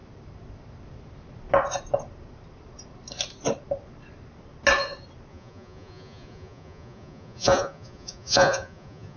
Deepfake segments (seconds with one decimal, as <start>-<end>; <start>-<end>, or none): 5.3-9.2